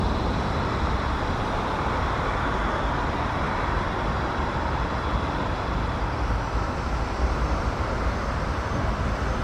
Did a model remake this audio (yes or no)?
yes